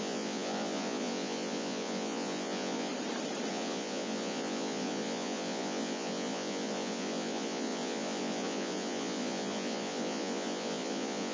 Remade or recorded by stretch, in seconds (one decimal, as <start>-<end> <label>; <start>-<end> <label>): 0.0-2.9 remade; 2.9-3.5 recorded; 3.5-11.3 remade

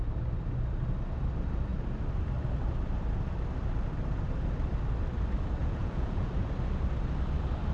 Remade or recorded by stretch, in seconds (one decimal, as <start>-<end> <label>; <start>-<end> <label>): 0.0-5.6 recorded; 5.6-6.3 remade; 6.3-7.7 recorded

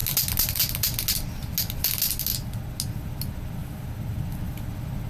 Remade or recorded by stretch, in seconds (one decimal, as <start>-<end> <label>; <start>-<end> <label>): 0.0-5.1 recorded

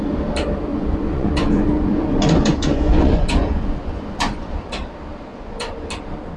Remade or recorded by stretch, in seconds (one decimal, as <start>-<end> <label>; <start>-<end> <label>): 0.0-0.7 recorded; 0.7-4.5 remade; 4.5-5.3 recorded; 5.3-5.9 remade; 5.9-6.4 recorded

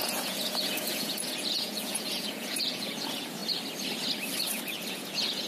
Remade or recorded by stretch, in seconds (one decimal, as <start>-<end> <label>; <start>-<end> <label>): 0.0-3.4 remade; 3.4-4.9 recorded; 4.9-5.5 remade

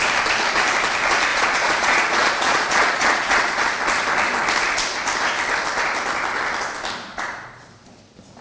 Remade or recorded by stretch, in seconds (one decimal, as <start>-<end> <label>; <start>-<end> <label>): 0.0-1.3 recorded; 1.3-3.6 remade; 3.6-7.1 recorded; 7.1-7.7 remade; 7.7-8.4 recorded